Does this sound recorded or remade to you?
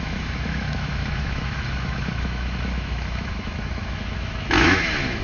remade